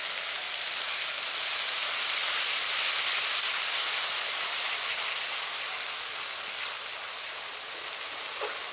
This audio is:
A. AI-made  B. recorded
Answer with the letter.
B